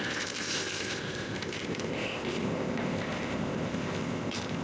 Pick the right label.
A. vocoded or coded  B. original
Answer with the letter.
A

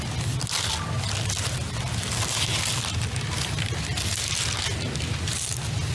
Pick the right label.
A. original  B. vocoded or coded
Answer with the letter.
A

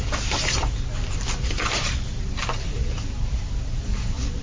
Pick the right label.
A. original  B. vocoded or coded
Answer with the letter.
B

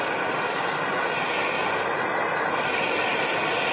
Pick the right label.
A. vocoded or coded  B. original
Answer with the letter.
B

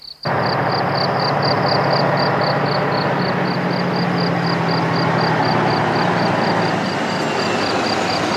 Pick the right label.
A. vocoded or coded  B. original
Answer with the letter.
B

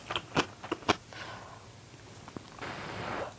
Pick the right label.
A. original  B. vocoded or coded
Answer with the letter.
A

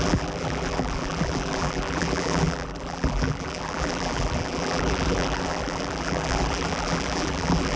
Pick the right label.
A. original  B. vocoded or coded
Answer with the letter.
B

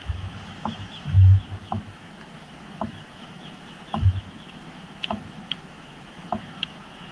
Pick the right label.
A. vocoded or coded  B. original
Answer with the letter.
A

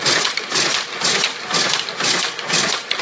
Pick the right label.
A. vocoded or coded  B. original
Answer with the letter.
B